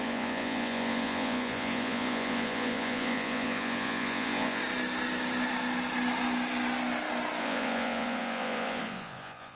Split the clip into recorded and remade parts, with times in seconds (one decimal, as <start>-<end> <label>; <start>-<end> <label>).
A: 0.0-4.6 remade; 4.6-7.4 recorded; 7.4-9.6 remade